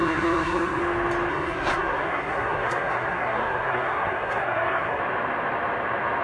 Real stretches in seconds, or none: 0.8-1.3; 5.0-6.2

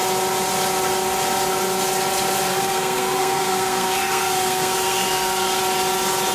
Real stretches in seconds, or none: 0.0-2.5; 5.6-6.3